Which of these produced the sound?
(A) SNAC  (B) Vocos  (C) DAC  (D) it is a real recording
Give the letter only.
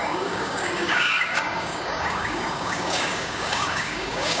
C